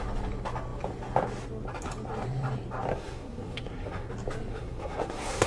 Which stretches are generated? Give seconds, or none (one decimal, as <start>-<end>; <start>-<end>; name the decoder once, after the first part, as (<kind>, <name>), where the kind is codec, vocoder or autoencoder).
2.9-4.1 (codec, SNAC); 4.5-5.5